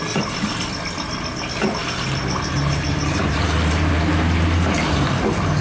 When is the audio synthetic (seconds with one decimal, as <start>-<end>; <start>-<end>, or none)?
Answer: 1.8-3.9